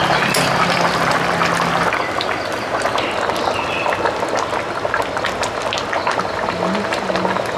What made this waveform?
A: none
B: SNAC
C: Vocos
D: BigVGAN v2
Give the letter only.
A